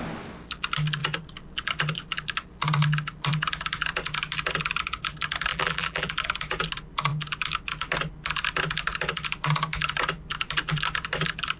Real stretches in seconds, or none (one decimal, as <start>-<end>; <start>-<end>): 0.0-5.5; 6.1-11.6